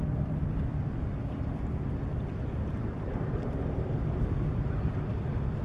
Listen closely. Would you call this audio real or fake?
real